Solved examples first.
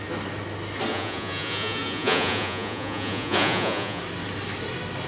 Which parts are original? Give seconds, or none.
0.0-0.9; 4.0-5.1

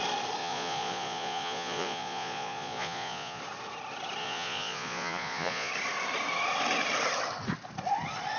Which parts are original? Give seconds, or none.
0.0-0.4; 3.4-4.2; 5.7-8.4

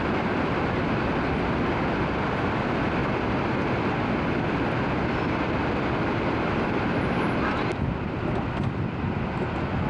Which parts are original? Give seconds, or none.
0.0-9.9